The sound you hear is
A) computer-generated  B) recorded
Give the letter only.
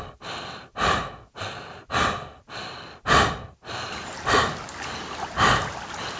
B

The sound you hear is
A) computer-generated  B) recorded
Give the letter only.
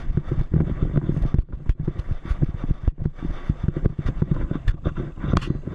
B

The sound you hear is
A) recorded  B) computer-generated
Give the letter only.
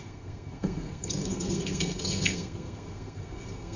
B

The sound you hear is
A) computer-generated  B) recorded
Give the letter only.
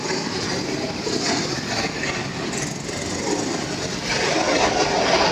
B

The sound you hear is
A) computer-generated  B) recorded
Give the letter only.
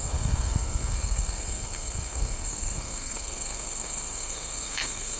A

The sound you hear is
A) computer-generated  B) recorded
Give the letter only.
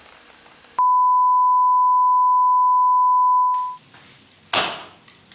B